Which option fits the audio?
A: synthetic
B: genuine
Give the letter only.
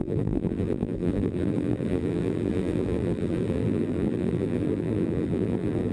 A